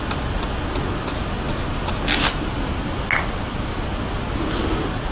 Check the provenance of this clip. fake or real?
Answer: real